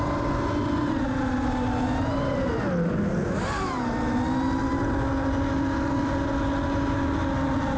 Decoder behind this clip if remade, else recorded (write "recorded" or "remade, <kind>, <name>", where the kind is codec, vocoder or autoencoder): recorded